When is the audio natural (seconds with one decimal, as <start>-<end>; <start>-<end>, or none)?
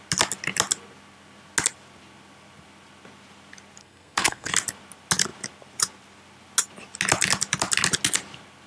0.0-3.8; 4.5-8.7